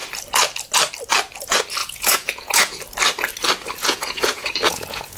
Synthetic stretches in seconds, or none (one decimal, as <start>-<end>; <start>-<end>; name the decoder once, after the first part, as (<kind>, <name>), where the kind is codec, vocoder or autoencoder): 1.8-2.8 (vocoder, Vocos); 3.8-5.2